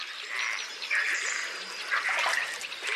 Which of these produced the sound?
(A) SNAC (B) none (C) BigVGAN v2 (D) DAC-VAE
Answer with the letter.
C